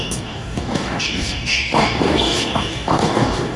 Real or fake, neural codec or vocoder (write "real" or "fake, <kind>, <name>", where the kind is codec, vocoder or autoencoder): fake, codec, DAC